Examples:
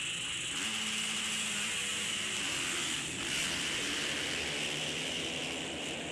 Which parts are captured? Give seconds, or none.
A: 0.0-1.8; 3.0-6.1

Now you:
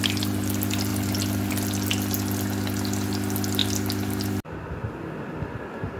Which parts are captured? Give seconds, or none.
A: 0.0-0.9; 1.5-6.0

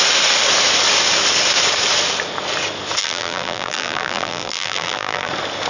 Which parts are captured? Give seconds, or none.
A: 0.0-3.0; 5.3-5.7

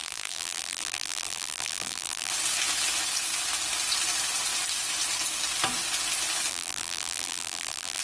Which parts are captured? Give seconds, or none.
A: 2.3-6.5

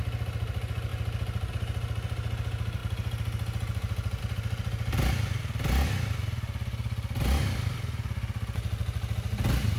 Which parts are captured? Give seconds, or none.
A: 0.0-9.8

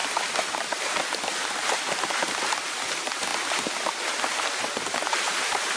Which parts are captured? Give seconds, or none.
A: 0.0-0.5; 3.3-5.2